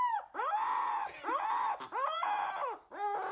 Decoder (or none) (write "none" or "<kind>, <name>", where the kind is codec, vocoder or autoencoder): none